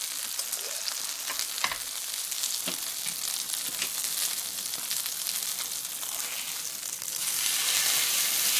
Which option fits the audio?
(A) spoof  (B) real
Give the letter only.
B